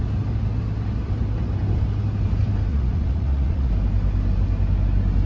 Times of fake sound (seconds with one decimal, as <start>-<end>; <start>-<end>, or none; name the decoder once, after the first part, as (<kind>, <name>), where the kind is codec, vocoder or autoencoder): 2.7-3.7 (vocoder, Vocos)